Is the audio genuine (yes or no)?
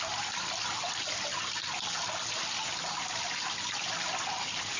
yes